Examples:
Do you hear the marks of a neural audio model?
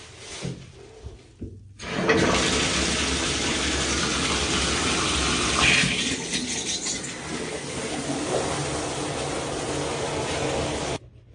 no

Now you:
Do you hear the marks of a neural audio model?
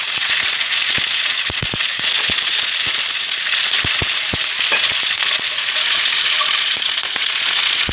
yes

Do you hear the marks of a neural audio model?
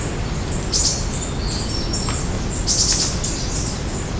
no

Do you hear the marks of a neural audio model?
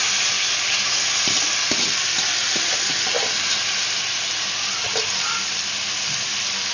no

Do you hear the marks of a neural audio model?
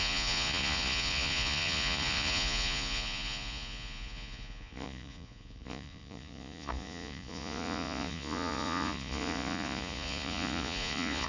yes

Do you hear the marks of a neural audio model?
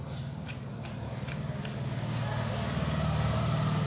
no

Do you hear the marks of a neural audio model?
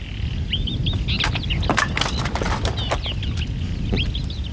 no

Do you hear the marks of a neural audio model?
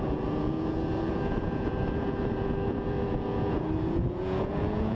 yes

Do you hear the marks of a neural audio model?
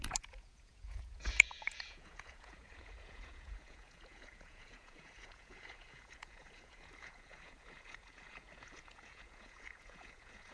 yes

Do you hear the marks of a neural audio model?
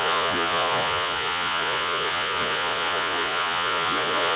yes